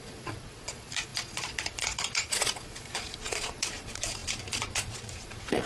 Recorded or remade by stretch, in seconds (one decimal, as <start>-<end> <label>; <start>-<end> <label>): 0.0-5.7 remade